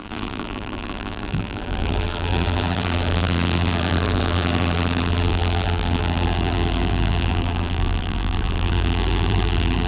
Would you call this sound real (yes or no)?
no